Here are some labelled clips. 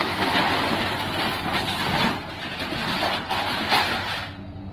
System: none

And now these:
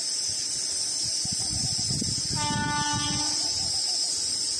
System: none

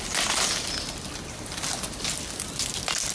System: none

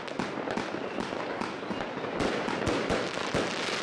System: none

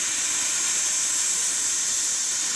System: none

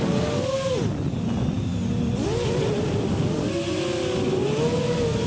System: none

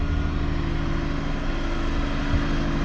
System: none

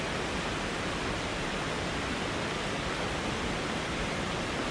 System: none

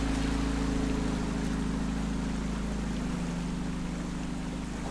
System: none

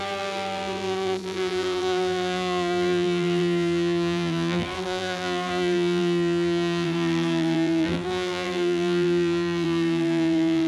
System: vocoder, BigVGAN v2